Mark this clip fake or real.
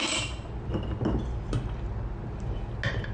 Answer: real